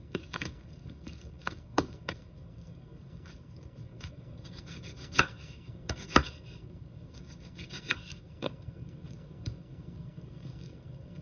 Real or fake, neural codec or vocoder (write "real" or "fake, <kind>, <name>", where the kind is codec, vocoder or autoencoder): fake, codec, SNAC